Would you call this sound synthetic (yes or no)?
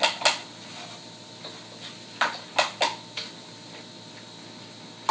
no